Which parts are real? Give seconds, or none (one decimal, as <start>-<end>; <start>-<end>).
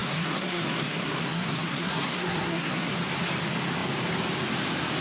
2.9-5.0